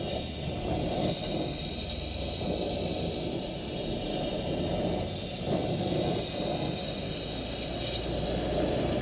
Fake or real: real